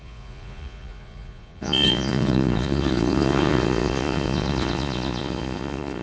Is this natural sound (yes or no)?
no